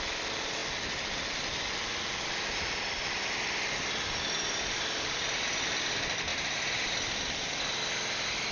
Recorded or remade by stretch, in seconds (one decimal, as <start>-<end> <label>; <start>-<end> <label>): 0.0-8.5 recorded